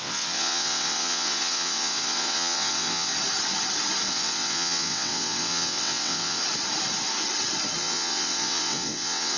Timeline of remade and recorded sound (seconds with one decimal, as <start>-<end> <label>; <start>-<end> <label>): 0.0-3.1 remade; 3.1-4.1 recorded; 4.1-6.4 remade; 6.4-7.8 recorded; 7.8-9.4 remade